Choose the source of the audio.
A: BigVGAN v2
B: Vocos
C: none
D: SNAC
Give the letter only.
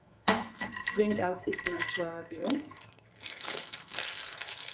D